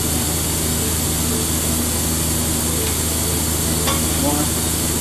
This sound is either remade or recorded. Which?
recorded